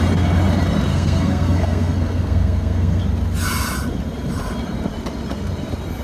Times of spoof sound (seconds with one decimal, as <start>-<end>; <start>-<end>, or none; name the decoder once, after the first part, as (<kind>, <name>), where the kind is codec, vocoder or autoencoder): 0.9-3.0 (codec, SNAC)